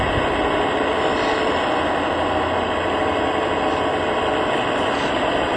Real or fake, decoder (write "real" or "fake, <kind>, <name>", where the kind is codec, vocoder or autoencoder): real